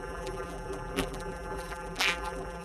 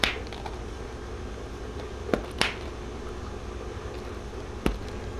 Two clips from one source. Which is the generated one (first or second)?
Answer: first